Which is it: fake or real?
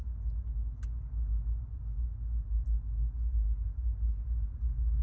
real